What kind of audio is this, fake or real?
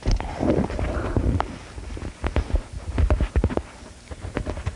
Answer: real